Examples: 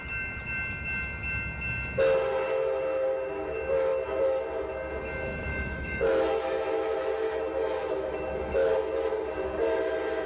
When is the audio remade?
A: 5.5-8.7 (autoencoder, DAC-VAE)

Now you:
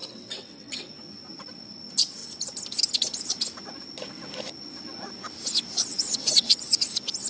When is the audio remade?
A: 0.0-0.9 (vocoder, WaveNeXt); 5.9-6.5